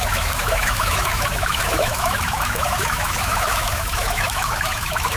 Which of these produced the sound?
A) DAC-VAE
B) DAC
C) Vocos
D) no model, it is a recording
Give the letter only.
A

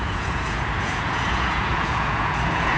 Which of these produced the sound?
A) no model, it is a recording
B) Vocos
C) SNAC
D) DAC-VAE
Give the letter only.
B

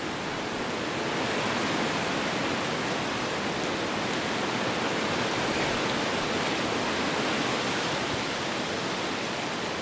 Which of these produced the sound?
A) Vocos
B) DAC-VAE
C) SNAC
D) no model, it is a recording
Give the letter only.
D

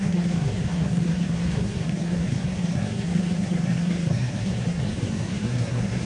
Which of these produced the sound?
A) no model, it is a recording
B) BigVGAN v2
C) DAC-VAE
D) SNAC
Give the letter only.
D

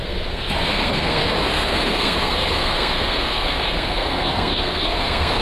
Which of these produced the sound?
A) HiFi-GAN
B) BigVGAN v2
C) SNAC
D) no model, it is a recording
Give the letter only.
C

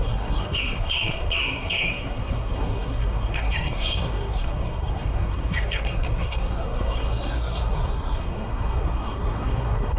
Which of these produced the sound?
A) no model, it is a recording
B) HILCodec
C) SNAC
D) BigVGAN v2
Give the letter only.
C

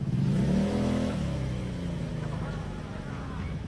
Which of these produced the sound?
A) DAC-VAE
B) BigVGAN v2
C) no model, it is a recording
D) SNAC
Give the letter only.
A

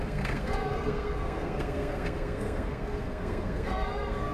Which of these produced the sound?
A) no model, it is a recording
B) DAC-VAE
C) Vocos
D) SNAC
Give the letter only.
D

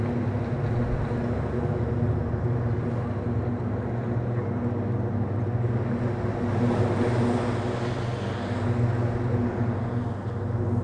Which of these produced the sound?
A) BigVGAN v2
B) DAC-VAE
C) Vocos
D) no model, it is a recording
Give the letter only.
D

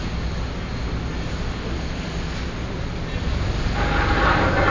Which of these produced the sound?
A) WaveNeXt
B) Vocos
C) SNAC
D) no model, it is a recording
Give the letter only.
D